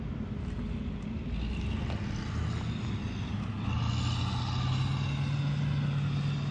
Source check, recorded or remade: recorded